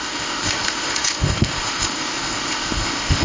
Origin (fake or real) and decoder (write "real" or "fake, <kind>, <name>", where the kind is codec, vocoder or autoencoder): fake, codec, ZipCodec